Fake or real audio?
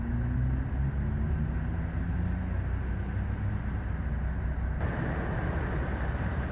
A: real